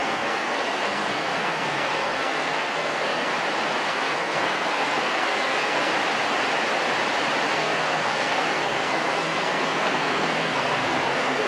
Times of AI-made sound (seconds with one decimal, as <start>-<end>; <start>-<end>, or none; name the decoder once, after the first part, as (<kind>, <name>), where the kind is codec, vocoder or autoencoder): 0.0-3.3 (codec, SNAC); 3.8-5.9; 7.5-11.5